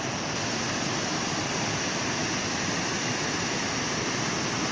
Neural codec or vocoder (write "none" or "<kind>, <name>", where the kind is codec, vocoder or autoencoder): none